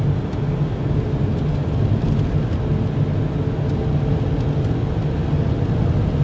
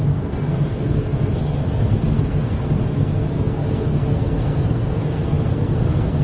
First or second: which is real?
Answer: first